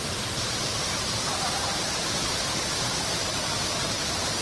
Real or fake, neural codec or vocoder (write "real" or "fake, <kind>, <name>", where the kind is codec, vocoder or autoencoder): fake, vocoder, BigVGAN v2